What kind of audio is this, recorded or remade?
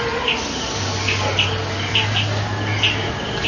recorded